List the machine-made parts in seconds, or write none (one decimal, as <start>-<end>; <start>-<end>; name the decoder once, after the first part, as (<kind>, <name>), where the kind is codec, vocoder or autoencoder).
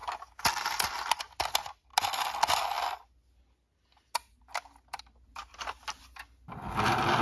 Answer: none